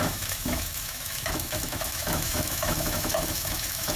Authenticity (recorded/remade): remade